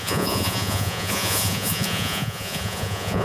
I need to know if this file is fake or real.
fake